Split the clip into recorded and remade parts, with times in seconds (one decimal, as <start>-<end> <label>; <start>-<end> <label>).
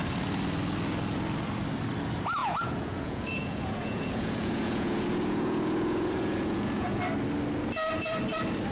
0.0-2.4 recorded; 2.4-7.0 remade; 7.0-8.7 recorded